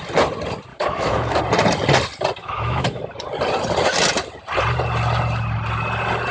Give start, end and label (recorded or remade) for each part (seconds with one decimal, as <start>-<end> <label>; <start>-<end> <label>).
0.0-0.7 recorded; 0.7-1.4 remade; 1.4-2.4 recorded; 2.4-3.0 remade; 3.0-6.3 recorded

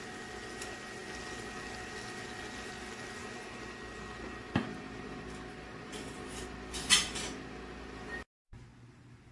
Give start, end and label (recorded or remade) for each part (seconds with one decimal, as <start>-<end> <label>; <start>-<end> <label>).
0.0-9.3 recorded